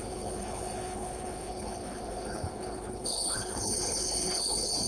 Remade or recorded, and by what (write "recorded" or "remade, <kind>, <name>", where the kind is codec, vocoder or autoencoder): remade, codec, HILCodec